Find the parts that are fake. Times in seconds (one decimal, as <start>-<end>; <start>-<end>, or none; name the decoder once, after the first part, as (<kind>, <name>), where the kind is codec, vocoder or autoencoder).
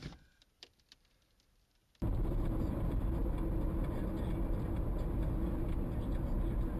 0.0-3.2 (vocoder, BigVGAN v2)